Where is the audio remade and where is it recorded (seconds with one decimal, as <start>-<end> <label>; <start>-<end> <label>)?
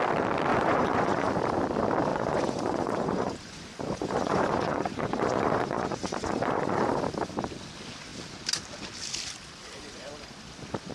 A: 0.0-0.5 recorded; 0.5-1.3 remade; 1.3-2.1 recorded; 2.1-7.0 remade; 7.0-9.6 recorded; 9.6-10.1 remade; 10.1-10.9 recorded